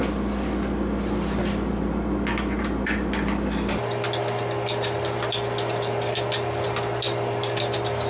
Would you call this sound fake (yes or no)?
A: no